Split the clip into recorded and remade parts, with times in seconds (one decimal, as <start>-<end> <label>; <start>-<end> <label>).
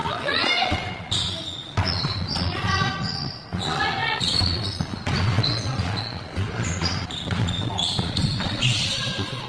0.0-9.5 remade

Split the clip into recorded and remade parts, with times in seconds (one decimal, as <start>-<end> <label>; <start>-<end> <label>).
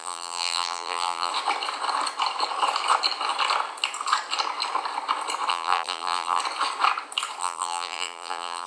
0.0-1.3 remade; 1.3-5.5 recorded; 5.5-6.4 remade; 6.4-7.4 recorded; 7.4-8.7 remade